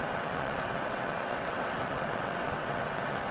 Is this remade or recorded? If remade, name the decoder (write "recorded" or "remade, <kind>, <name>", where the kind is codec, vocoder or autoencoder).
remade, vocoder, WaveNeXt